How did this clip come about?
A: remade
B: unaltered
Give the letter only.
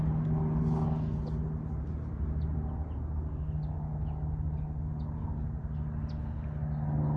B